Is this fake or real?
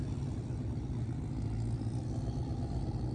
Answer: fake